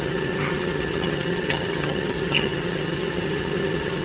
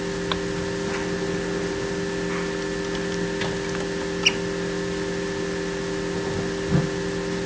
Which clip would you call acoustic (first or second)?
second